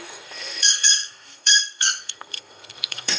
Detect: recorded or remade remade